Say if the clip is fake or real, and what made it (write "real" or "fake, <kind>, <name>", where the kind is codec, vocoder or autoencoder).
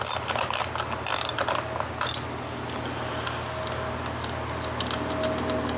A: real